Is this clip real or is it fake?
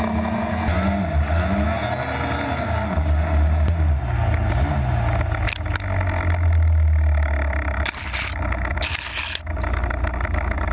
real